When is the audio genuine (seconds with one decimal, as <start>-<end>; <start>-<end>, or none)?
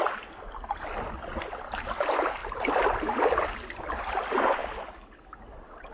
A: 0.0-5.9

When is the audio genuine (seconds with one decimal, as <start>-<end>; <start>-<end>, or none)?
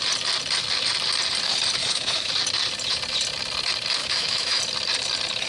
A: 0.0-1.8; 2.3-4.0; 4.6-5.5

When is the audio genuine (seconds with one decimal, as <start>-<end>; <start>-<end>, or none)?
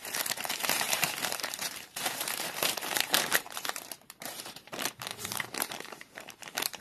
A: none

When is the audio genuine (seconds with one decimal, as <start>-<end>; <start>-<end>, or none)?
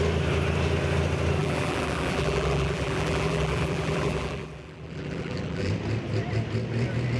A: 0.0-1.4; 5.7-7.2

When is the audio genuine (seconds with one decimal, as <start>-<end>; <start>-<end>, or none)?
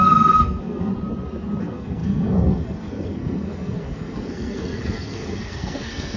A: 0.9-1.6